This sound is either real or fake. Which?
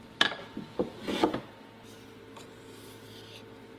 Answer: real